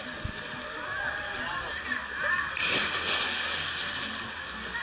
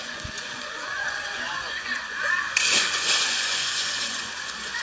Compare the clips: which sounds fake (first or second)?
second